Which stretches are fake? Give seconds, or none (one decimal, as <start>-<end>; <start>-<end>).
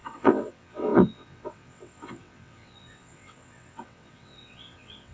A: 0.0-5.1